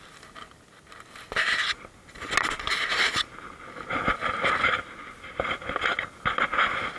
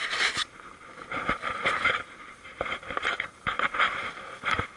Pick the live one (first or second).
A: first